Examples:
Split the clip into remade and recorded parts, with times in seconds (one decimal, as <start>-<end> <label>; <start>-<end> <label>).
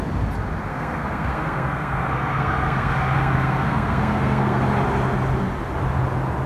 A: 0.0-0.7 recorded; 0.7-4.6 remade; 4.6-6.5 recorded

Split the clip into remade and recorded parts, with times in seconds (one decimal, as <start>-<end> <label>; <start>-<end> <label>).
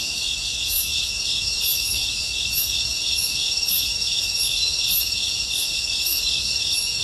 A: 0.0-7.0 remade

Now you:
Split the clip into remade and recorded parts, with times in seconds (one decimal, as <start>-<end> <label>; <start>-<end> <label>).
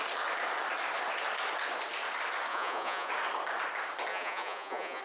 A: 0.0-2.5 recorded; 2.5-3.1 remade; 3.1-4.1 recorded; 4.1-5.0 remade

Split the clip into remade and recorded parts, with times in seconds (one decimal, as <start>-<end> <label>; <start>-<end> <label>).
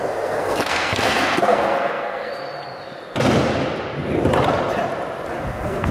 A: 0.0-2.3 remade; 2.3-5.4 recorded; 5.4-5.9 remade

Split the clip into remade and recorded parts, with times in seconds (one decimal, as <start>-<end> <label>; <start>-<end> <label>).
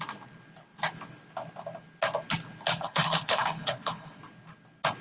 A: 0.0-2.7 recorded; 2.7-4.2 remade; 4.2-5.0 recorded